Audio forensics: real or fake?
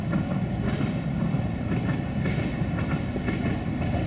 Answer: real